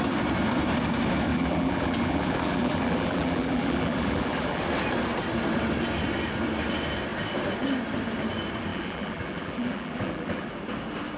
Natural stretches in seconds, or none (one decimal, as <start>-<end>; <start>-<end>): 0.0-1.3; 4.6-8.7; 10.5-11.2

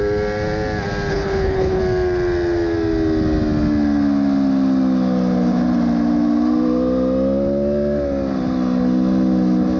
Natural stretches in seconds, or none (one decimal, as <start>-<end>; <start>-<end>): 0.0-1.1; 1.8-9.8